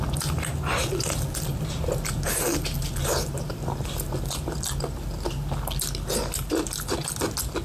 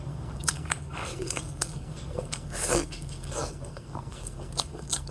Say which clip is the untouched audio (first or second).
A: first